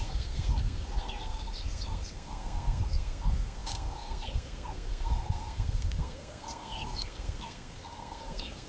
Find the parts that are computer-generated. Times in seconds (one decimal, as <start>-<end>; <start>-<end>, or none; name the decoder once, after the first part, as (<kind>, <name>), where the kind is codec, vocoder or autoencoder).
0.0-8.7 (codec, SNAC)